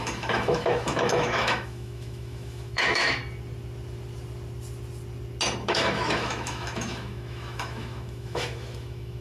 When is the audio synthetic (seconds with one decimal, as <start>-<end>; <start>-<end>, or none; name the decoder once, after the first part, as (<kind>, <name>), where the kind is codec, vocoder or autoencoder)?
0.0-3.2 (autoencoder, DAC-VAE); 5.6-9.2